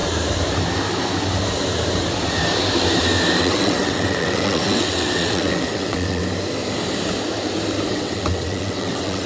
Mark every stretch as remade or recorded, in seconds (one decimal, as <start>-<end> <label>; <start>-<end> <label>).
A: 0.0-3.4 recorded; 3.4-6.2 remade; 6.2-7.9 recorded; 7.9-9.3 remade